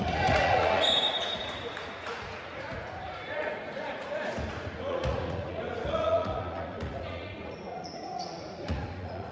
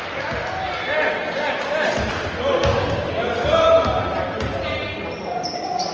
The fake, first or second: first